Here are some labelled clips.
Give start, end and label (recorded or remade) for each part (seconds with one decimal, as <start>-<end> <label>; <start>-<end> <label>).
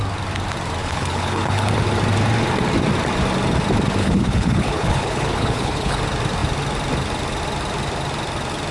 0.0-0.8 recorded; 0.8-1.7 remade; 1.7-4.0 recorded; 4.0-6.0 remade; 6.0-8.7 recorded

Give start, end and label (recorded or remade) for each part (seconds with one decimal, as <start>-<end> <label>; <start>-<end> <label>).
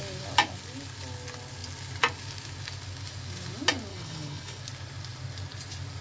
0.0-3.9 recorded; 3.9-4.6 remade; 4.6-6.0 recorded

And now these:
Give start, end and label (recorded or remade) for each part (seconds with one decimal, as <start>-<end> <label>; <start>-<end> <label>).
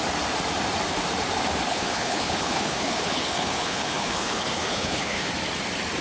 0.0-1.7 recorded; 1.7-5.3 remade; 5.3-6.0 recorded